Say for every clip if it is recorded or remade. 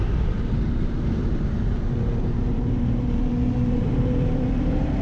remade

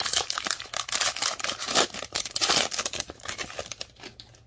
remade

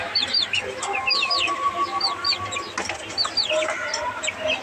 recorded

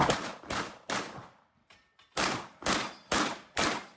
recorded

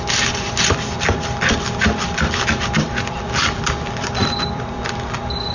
remade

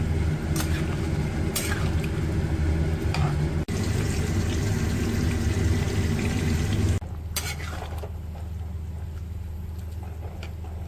recorded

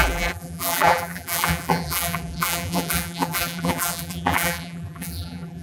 remade